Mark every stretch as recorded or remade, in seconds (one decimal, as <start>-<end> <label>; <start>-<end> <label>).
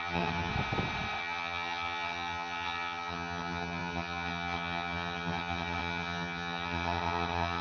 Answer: 0.0-0.5 remade; 0.5-1.2 recorded; 1.2-7.6 remade